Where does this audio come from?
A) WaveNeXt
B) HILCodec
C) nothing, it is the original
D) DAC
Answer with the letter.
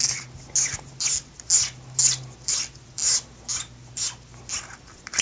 C